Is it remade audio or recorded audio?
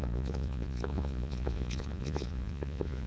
remade